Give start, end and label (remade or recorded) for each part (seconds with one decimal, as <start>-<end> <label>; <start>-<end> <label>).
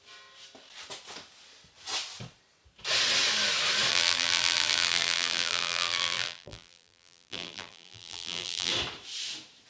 0.0-3.9 recorded; 3.9-8.7 remade; 8.7-9.7 recorded